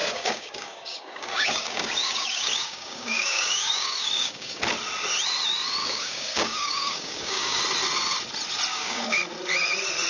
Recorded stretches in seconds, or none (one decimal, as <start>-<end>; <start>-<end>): 4.6-5.8; 7.6-8.7; 9.2-10.1